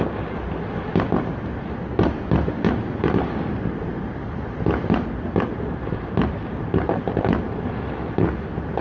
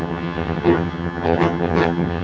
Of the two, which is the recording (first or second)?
first